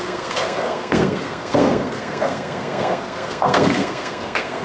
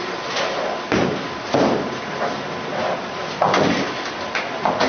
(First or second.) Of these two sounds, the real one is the second